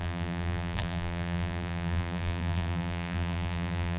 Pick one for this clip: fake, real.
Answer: fake